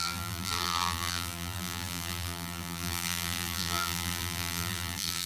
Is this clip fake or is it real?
fake